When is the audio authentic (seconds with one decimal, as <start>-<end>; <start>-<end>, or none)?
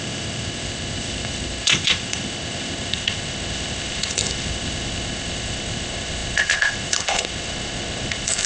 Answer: none